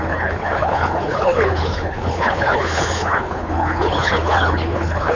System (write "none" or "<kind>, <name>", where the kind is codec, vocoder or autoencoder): codec, HILCodec